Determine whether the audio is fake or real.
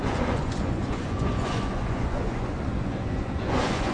fake